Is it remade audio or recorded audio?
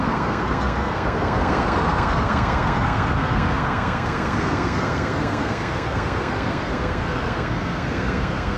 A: remade